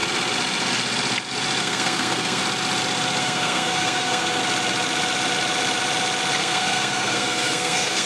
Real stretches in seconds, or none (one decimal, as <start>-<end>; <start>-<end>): 0.0-1.6; 2.4-3.2; 4.4-6.4